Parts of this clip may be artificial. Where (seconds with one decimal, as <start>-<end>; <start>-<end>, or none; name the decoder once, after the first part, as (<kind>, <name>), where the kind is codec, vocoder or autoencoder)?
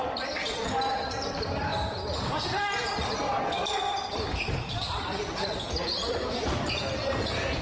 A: 0.0-1.7 (vocoder, BigVGAN v2); 2.4-7.6